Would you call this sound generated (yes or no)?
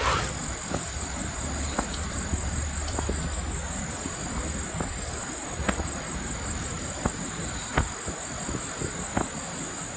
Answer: no